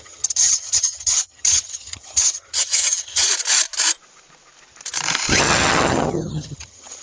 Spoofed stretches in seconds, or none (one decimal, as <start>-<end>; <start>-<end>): 0.0-3.3; 5.4-7.0